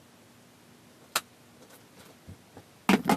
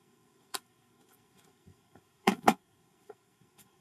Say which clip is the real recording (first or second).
first